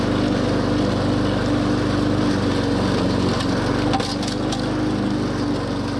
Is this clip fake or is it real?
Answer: real